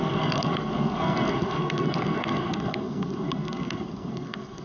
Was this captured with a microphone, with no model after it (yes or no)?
no